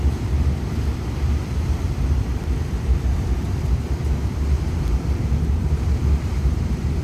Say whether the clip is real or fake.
fake